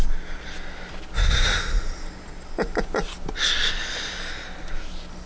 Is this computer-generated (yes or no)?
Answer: no